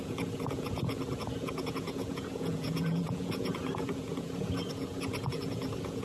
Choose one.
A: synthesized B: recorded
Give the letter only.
A